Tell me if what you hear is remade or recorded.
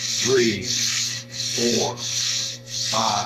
remade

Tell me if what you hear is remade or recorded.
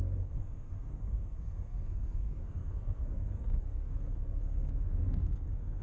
remade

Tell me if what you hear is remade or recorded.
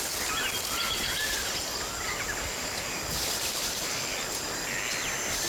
recorded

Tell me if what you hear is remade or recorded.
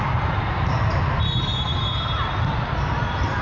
recorded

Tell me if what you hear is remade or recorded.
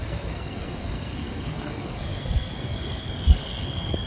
remade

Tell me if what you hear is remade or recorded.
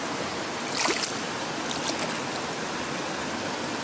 recorded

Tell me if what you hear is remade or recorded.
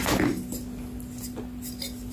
recorded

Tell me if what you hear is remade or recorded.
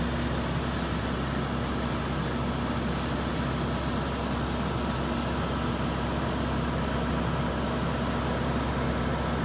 recorded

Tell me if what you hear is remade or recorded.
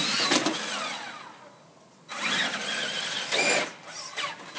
recorded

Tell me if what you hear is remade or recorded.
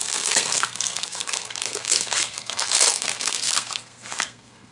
remade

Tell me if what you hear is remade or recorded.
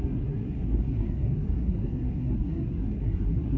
remade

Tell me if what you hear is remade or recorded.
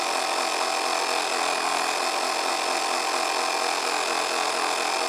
recorded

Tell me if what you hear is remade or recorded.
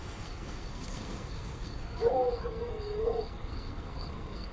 remade